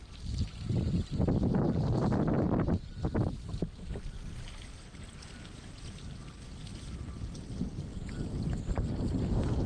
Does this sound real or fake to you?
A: real